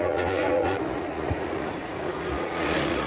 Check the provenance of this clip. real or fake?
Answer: fake